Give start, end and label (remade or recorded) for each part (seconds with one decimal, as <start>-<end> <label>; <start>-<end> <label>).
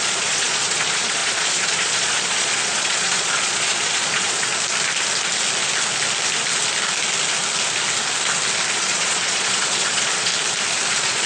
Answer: 0.0-4.5 remade; 4.5-8.7 recorded; 8.7-10.3 remade; 10.3-10.9 recorded; 10.9-11.3 remade